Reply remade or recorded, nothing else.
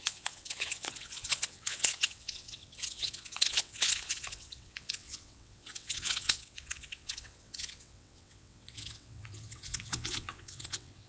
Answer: remade